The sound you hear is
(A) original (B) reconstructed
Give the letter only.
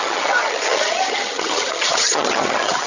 B